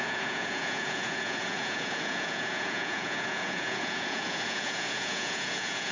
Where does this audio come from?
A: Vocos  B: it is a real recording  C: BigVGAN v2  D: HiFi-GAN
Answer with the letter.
A